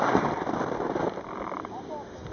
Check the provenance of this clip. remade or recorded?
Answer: recorded